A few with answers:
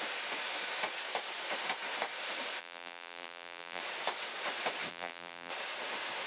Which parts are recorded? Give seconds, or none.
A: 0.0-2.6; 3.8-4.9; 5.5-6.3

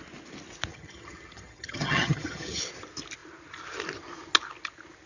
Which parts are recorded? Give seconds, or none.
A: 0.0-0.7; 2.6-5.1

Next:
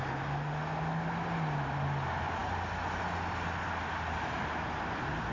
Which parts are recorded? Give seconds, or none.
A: 0.0-5.3